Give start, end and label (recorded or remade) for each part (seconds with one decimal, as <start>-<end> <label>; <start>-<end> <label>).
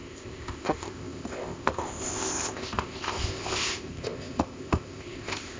0.0-5.6 remade